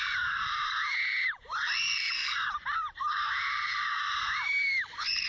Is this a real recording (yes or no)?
no